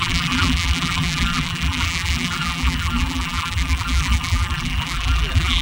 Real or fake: fake